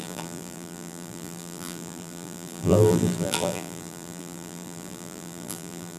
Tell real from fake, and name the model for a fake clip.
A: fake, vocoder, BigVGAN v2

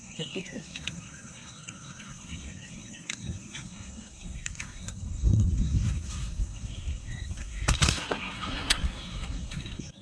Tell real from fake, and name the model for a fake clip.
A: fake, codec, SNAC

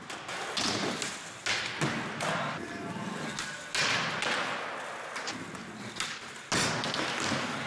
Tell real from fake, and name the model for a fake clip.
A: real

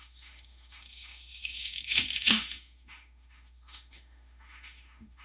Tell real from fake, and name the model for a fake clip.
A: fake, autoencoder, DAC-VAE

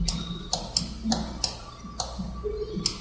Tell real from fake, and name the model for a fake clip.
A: real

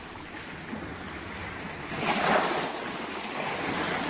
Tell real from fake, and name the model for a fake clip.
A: real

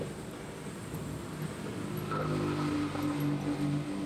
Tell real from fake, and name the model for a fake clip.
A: real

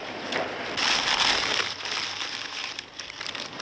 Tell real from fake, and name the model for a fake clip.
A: real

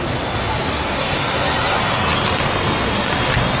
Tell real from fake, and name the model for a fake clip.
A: real